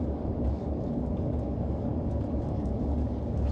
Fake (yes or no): yes